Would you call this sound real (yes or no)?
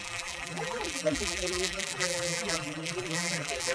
no